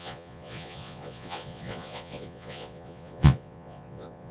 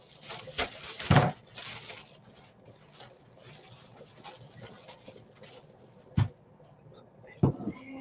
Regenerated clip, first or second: first